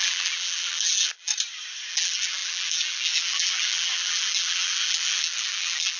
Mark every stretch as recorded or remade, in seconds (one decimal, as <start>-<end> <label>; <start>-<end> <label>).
0.0-1.3 remade; 1.3-1.9 recorded; 1.9-6.0 remade